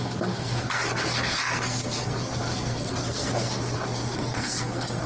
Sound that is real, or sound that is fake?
fake